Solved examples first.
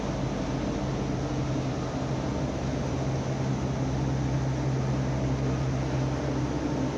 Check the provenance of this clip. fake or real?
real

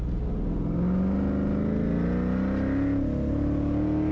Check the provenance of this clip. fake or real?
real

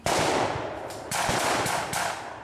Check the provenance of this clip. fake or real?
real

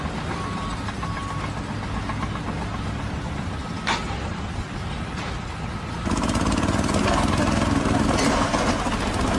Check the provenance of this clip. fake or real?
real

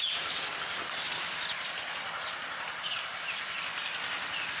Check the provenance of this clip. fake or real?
real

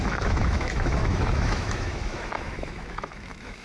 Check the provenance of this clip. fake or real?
fake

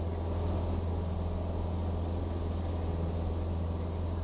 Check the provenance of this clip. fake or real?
real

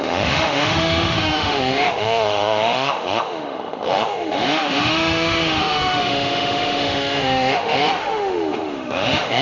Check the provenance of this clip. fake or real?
fake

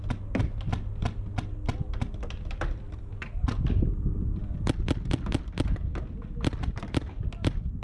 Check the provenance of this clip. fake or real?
real